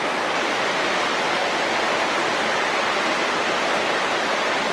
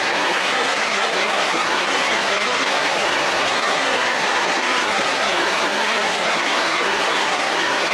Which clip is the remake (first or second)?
second